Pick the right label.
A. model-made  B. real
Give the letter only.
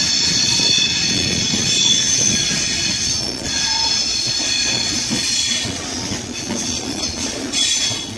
A